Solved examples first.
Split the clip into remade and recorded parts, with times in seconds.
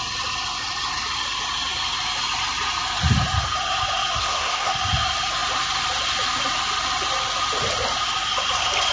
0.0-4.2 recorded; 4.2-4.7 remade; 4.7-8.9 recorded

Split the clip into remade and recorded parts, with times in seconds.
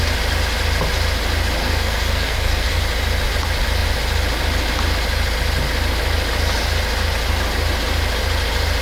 0.0-1.6 recorded; 1.6-2.8 remade; 2.8-8.8 recorded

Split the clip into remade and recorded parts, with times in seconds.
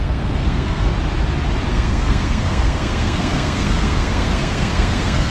0.0-0.9 remade; 0.9-1.7 recorded; 1.7-5.3 remade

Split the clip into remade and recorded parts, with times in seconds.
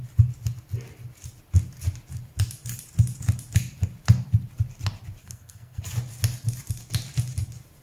0.0-5.2 recorded; 5.2-5.8 remade; 5.8-7.8 recorded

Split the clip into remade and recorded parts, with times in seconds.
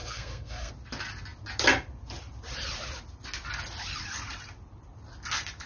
0.0-0.7 remade; 0.7-5.7 recorded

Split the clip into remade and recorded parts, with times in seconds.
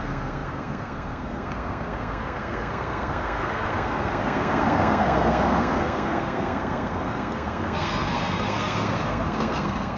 0.0-10.0 remade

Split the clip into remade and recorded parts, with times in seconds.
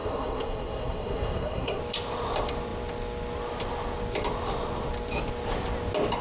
0.0-1.8 remade; 1.8-6.2 recorded